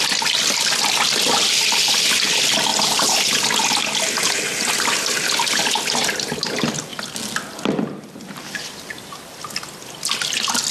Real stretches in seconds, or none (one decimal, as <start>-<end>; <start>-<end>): 0.0-10.7